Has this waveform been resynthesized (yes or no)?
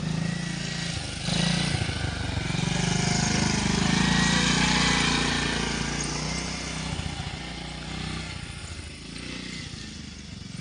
no